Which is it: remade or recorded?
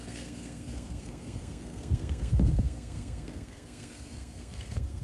remade